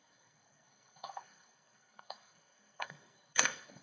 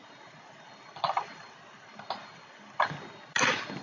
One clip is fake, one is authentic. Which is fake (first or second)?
first